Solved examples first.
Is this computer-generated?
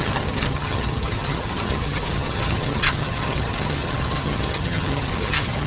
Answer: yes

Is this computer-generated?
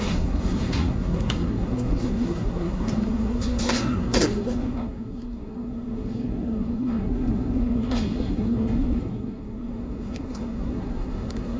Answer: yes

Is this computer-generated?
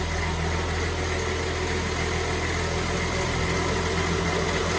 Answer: no